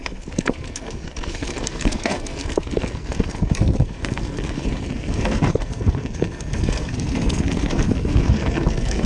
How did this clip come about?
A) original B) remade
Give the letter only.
B